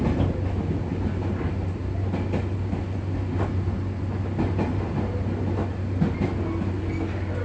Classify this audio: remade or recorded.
recorded